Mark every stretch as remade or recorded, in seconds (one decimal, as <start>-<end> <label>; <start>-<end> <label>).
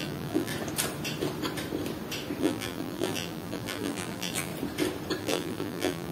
0.0-0.5 remade; 0.5-2.4 recorded; 2.4-4.5 remade; 4.5-5.2 recorded; 5.2-6.1 remade